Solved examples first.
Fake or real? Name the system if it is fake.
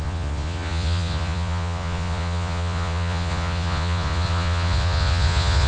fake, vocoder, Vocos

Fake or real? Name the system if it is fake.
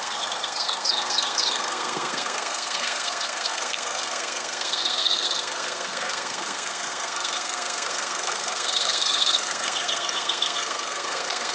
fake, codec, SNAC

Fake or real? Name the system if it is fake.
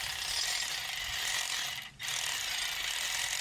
real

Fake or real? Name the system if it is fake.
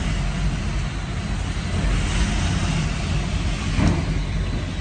real